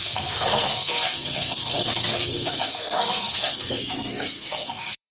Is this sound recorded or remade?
remade